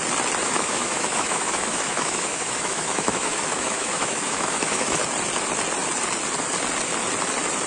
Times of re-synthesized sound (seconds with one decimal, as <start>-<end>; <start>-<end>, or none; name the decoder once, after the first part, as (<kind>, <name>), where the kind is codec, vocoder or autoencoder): 0.4-5.0 (autoencoder, DAC-VAE)